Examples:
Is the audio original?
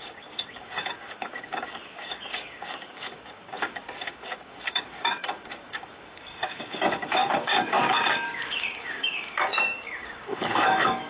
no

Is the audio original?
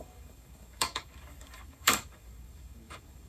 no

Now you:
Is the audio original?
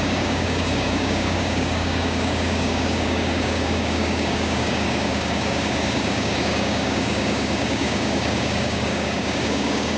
no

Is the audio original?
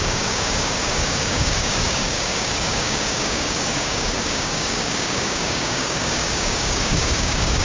no